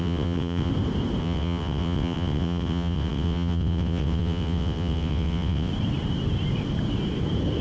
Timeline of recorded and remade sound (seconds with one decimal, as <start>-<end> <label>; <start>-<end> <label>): 0.0-0.7 remade; 0.7-1.2 recorded; 1.2-5.7 remade; 5.7-7.6 recorded